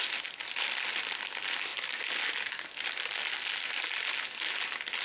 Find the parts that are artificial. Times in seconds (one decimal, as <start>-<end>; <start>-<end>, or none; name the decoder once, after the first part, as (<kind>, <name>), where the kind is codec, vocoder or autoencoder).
none